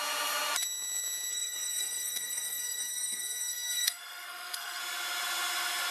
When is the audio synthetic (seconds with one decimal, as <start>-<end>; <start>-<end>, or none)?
1.3-4.8